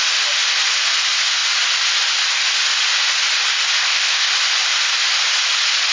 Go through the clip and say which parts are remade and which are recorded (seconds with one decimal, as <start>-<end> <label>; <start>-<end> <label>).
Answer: 0.0-3.8 recorded; 3.8-4.3 remade; 4.3-5.9 recorded